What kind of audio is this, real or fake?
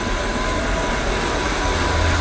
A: real